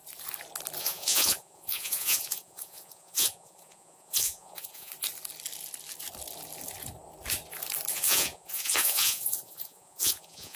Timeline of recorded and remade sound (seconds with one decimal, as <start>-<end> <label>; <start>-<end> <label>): 0.0-0.8 recorded; 0.8-4.9 remade; 4.9-7.9 recorded; 7.9-10.6 remade

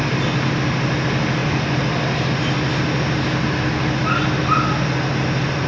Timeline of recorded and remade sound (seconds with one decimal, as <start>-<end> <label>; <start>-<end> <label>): 0.0-5.7 recorded